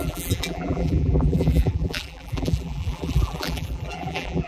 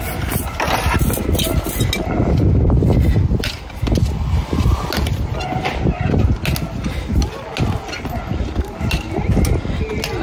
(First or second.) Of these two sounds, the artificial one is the first